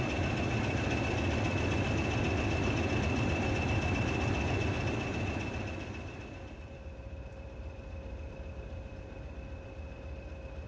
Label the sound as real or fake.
fake